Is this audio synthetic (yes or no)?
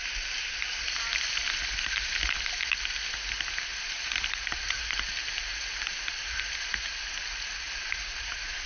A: no